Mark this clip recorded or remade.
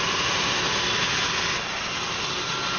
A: recorded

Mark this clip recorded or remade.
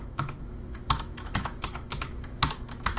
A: remade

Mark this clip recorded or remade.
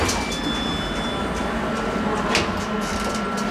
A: recorded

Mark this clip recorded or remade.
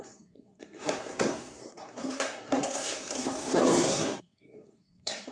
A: remade